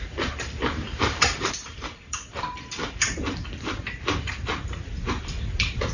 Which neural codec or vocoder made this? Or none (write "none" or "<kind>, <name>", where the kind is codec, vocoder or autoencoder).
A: vocoder, BigVGAN v2